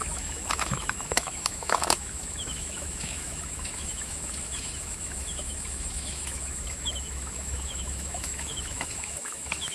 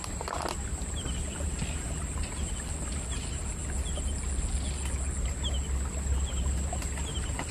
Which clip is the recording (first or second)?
second